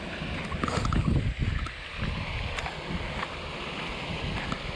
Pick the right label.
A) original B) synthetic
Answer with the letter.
A